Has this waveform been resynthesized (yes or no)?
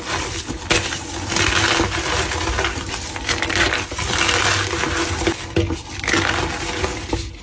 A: no